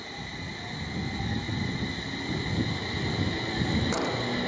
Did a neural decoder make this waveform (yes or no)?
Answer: no